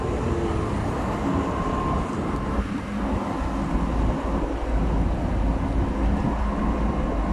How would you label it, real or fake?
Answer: real